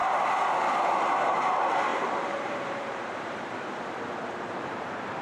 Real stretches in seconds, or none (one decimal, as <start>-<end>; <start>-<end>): 0.0-1.9